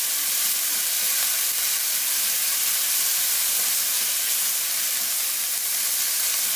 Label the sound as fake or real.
real